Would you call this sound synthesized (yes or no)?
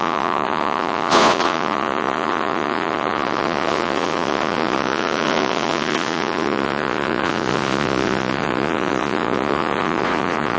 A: yes